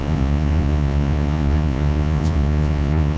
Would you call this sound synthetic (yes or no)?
yes